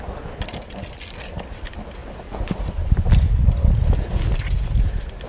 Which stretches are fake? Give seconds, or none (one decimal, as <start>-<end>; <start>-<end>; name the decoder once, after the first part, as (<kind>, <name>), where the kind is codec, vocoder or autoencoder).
none